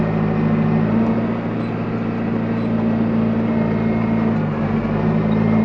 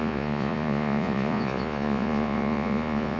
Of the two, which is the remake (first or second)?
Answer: second